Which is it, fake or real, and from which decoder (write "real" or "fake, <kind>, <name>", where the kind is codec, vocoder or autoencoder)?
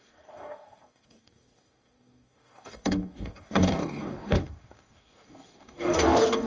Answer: fake, codec, DAC